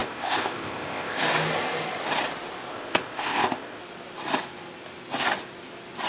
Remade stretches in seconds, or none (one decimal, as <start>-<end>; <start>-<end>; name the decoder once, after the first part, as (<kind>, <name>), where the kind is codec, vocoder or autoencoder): 0.0-1.2 (codec, ZipCodec); 2.7-3.8